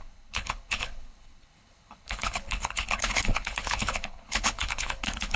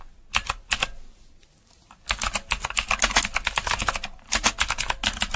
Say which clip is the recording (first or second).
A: second